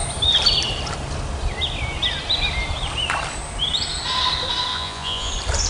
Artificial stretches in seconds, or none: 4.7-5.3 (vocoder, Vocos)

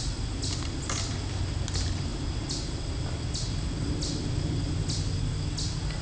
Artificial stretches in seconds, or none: none

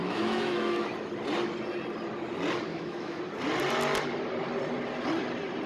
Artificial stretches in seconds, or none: 0.0-0.9 (autoencoder, DAC-VAE); 2.7-3.2

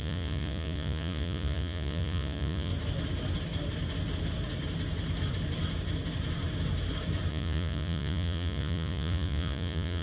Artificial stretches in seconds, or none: 0.0-2.7 (vocoder, Vocos); 7.3-10.0

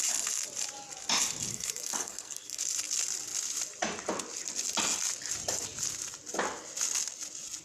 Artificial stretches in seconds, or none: 1.5-2.6 (codec, SNAC)